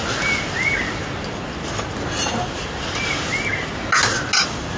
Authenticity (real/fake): real